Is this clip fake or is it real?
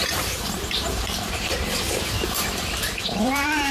fake